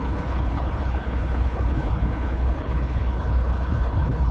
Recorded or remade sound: remade